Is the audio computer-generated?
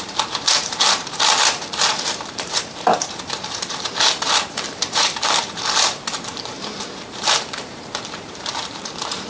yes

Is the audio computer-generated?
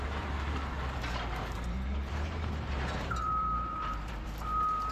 yes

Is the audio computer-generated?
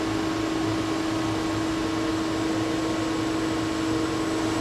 no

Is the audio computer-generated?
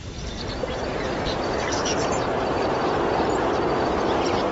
yes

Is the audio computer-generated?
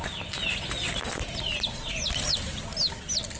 no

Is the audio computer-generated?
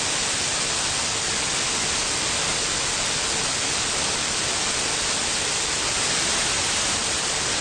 no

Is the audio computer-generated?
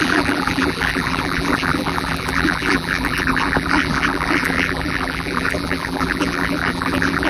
yes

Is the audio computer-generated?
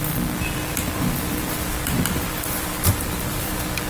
yes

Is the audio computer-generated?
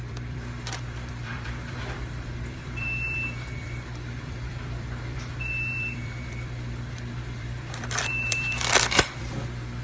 yes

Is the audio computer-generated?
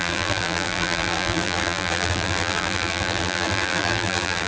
yes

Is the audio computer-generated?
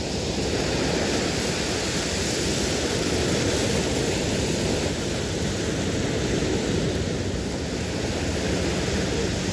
no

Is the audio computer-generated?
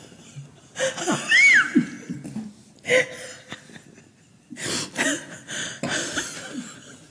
no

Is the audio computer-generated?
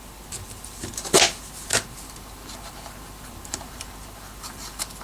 yes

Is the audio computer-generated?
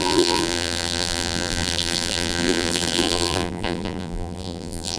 yes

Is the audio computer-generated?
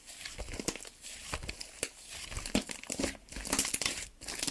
no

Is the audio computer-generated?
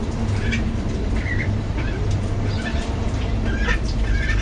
yes